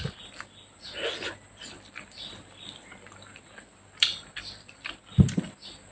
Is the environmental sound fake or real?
real